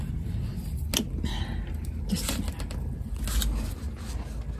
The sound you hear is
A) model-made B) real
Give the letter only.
B